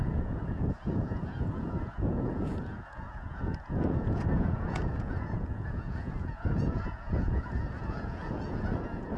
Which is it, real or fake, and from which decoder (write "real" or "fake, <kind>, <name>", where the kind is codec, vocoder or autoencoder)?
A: fake, vocoder, Vocos